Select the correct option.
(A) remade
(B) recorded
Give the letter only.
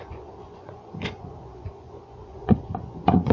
A